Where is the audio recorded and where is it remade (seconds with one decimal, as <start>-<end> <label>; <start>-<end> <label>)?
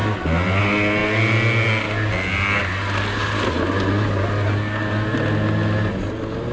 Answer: 0.0-6.5 recorded